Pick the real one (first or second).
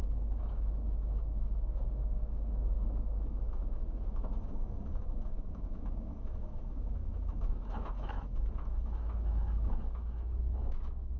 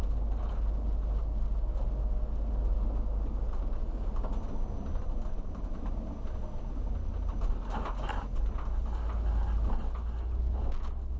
second